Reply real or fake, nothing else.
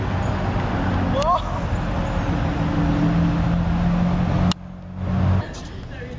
real